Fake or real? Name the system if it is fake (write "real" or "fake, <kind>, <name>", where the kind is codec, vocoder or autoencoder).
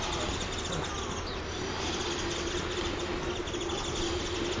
real